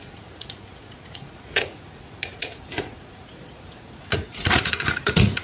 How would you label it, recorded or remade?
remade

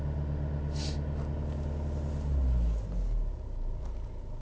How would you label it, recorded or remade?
recorded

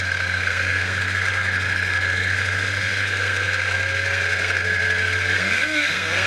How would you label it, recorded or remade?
remade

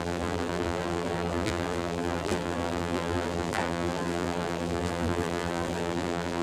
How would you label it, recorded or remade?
remade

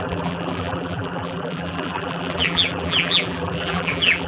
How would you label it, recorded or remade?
remade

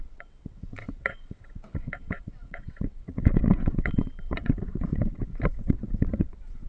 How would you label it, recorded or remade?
remade